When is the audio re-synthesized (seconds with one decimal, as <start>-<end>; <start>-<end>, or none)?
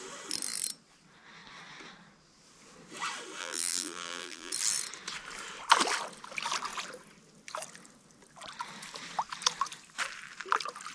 3.4-4.5